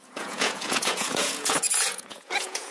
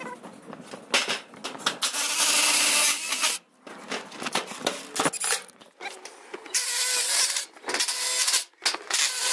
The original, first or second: second